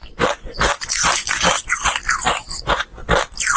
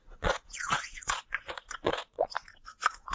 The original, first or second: first